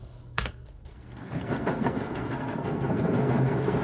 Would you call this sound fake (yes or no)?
yes